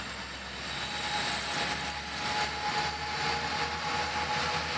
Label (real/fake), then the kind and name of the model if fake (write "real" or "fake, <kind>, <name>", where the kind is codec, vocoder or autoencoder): real